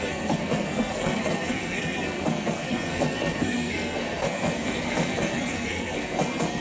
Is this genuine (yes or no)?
no